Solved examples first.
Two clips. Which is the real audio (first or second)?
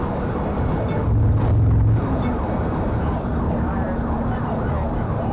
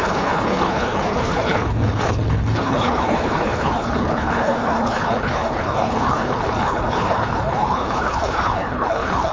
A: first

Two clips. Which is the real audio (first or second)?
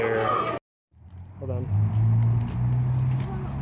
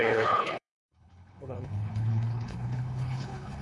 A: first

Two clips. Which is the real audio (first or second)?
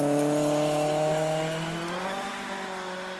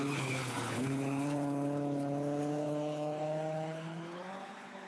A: first